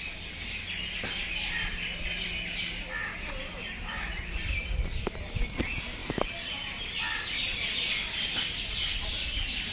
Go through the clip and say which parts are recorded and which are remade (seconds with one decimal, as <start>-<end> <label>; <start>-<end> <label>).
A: 0.0-9.7 recorded